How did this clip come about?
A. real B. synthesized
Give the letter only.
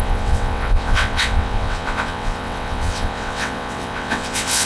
B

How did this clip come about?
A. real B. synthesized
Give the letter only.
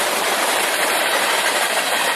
B